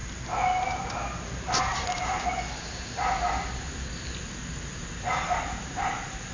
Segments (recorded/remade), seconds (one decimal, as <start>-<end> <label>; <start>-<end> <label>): 0.0-1.7 recorded; 1.7-2.1 remade; 2.1-4.9 recorded; 4.9-6.3 remade